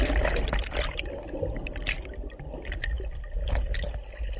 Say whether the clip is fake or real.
real